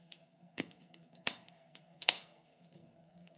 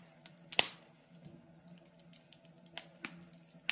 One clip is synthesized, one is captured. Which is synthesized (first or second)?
first